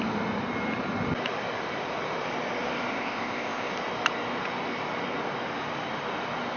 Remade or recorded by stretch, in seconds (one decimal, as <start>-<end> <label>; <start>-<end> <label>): 0.0-2.9 recorded; 2.9-3.7 remade; 3.7-6.6 recorded